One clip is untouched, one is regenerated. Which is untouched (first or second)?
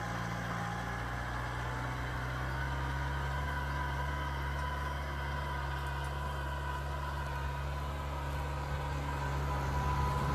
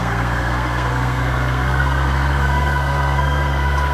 first